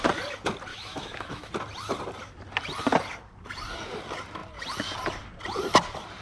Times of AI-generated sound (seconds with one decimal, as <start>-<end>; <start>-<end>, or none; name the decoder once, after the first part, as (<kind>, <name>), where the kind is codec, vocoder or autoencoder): 0.7-1.5 (autoencoder, DAC-VAE)